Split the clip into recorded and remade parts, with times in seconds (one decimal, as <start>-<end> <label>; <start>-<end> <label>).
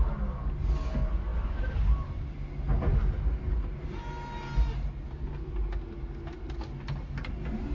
0.0-7.7 recorded